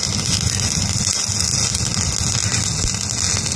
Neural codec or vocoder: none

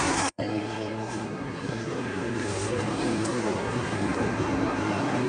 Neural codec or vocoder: codec, SNAC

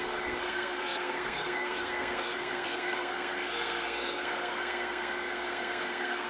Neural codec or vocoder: codec, SNAC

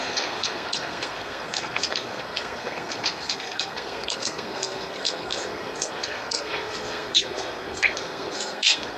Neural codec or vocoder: codec, SNAC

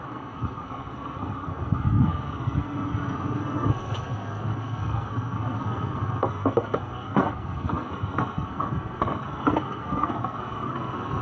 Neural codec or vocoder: codec, SNAC